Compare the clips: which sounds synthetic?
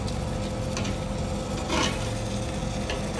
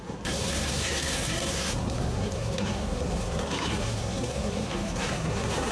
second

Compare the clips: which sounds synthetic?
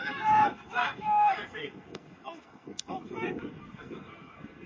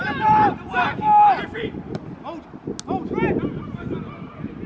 first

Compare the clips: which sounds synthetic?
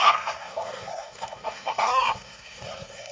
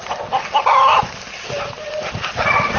first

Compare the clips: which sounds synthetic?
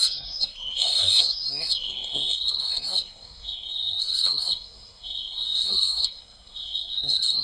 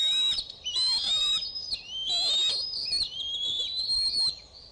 first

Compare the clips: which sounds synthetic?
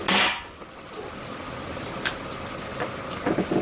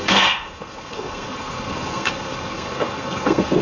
second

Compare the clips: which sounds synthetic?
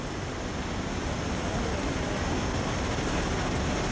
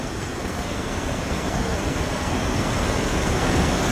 second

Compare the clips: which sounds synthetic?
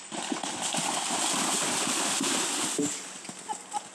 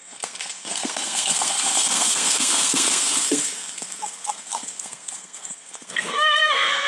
second